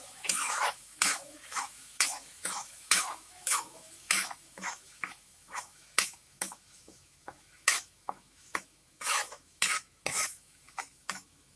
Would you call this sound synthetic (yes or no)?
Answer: yes